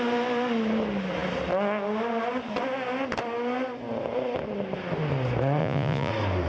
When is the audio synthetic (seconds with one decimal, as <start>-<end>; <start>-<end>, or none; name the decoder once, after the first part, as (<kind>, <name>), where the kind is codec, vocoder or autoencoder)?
5.6-6.1 (vocoder, Vocos)